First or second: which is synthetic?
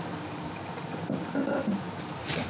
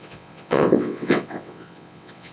second